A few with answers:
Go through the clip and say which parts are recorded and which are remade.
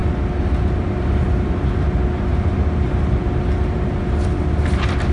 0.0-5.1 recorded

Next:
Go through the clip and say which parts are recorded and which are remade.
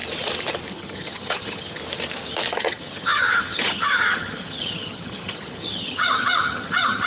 0.0-0.7 recorded; 0.7-1.8 remade; 1.8-2.5 recorded; 2.5-7.1 remade